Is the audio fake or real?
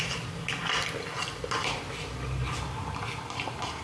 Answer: real